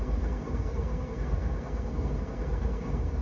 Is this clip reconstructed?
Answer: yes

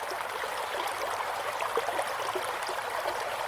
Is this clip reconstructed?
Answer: no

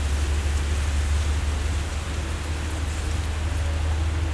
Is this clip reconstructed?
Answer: no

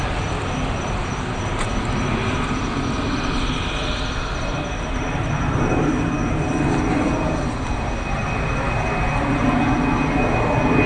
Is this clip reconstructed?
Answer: no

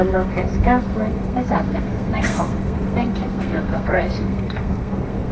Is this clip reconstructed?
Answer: yes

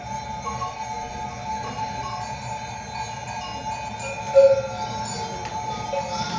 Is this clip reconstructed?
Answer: no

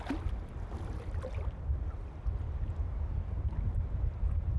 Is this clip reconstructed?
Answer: no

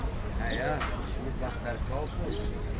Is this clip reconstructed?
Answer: no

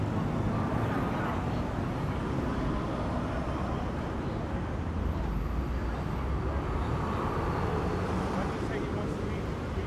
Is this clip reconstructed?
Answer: no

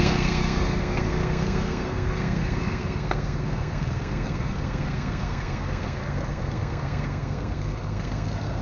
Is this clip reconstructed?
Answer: yes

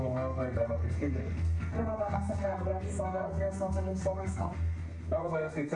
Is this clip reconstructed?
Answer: yes